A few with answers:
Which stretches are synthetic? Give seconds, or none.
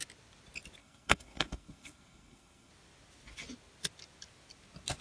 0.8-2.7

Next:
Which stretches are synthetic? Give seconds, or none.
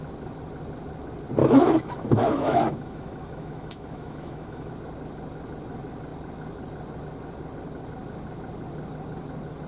1.4-4.7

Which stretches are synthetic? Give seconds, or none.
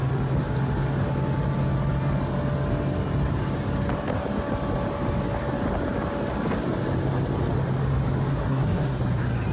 8.3-9.0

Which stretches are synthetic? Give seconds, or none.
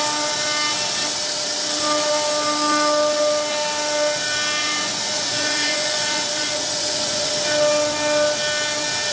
4.6-7.3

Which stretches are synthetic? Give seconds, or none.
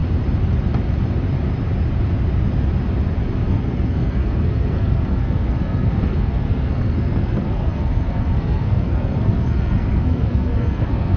3.5-11.2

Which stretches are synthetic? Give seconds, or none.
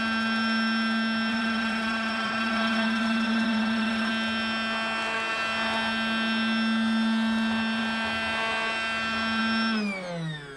1.3-4.1